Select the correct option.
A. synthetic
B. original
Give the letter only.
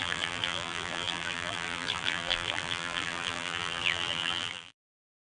A